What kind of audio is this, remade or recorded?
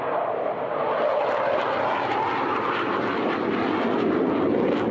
recorded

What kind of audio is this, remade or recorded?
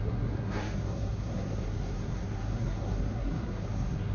remade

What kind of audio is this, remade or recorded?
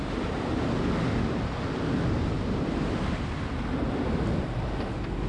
recorded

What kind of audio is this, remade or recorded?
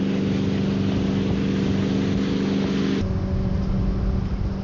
recorded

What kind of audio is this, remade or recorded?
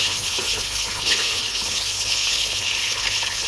remade